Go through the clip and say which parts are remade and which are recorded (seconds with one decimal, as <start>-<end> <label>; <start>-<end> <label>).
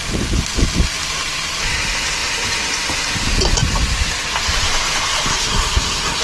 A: 0.0-5.3 recorded; 5.3-6.2 remade